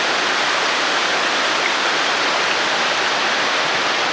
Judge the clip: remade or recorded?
recorded